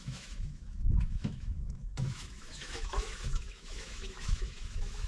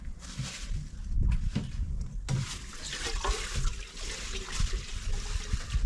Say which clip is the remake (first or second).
first